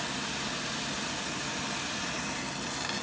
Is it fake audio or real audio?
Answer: real